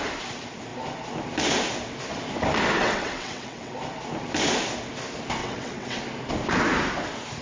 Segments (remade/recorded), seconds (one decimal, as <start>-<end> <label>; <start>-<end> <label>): 0.0-2.8 recorded; 2.8-3.8 remade; 3.8-5.4 recorded; 5.4-6.0 remade; 6.0-7.4 recorded